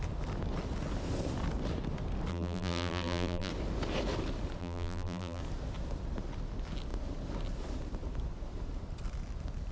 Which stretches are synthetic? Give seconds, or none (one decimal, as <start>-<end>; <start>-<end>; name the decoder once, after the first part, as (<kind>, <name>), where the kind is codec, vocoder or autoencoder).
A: 2.3-3.5 (vocoder, BigVGAN v2); 4.6-5.4